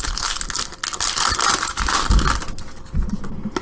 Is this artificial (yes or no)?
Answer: no